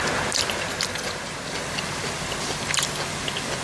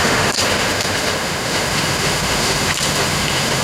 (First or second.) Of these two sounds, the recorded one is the first